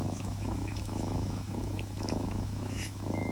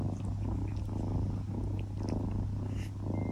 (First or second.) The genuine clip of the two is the second